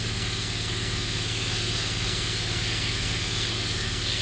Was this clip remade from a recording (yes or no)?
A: yes